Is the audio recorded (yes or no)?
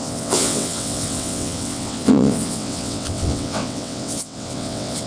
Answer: no